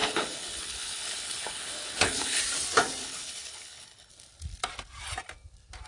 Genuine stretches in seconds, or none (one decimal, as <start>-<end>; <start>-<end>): 2.4-3.0; 4.1-5.9